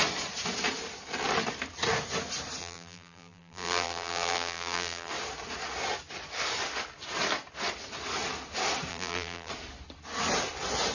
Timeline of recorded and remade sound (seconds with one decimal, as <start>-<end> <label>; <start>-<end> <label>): 0.0-2.6 recorded; 2.6-5.1 remade; 5.1-8.9 recorded; 8.9-9.5 remade; 9.5-10.9 recorded